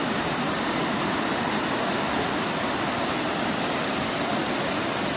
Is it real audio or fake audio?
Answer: real